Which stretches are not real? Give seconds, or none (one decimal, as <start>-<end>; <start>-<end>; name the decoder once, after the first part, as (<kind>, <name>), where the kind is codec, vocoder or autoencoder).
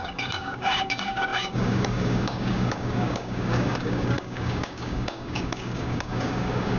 0.0-6.8 (codec, DAC)